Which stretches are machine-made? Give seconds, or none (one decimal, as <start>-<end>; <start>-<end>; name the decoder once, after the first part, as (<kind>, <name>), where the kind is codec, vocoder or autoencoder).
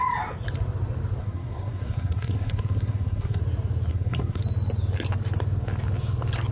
1.2-3.4 (codec, SNAC); 3.9-4.4